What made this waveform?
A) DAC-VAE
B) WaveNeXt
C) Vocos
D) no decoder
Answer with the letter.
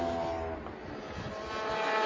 D